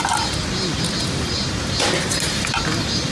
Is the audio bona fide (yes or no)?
yes